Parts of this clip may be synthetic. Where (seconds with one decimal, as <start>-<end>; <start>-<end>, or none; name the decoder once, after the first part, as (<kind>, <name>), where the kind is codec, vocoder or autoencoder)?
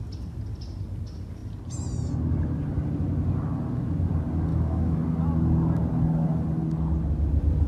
4.5-5.0 (autoencoder, DAC-VAE)